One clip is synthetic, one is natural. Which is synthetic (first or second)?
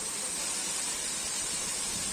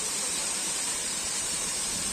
second